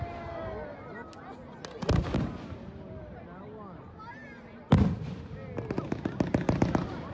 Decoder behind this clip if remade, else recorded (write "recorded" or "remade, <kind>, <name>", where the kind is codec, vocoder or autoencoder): recorded